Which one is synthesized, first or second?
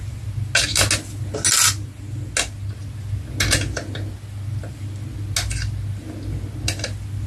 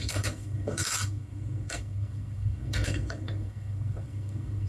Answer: second